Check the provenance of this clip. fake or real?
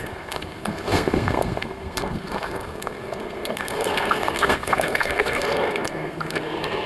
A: fake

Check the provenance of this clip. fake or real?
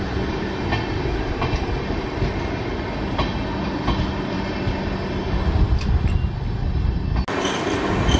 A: real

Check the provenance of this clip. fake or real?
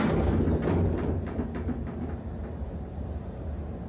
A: real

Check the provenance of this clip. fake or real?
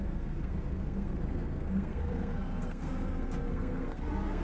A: fake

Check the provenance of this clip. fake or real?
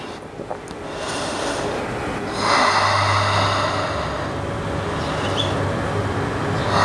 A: real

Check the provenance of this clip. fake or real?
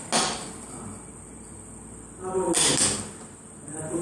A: real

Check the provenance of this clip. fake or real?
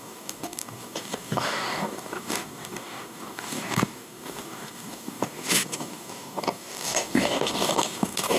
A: fake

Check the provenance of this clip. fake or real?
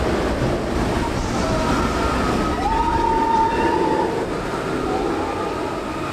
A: real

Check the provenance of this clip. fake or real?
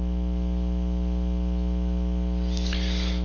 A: real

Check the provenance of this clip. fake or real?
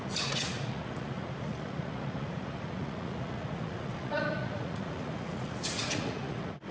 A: fake